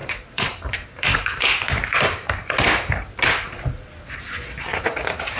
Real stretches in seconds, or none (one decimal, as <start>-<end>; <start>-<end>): 2.3-4.7

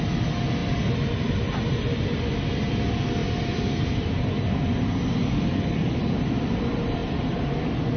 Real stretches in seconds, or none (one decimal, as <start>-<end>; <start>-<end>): 0.0-3.2; 4.2-7.0; 7.6-8.0

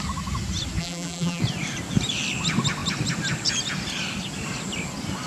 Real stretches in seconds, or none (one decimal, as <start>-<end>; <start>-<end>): 0.0-0.8; 1.4-5.3

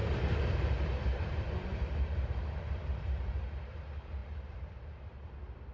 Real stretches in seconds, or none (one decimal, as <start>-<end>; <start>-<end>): 3.3-5.7

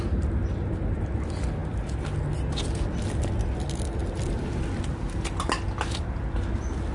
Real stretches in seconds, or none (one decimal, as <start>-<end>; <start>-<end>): 0.0-4.0; 4.8-6.9

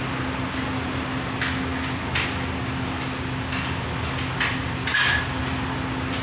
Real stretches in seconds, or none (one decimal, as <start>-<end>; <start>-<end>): 0.0-6.2

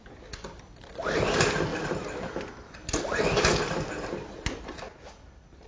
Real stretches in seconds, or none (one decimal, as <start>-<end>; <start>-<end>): 0.0-5.7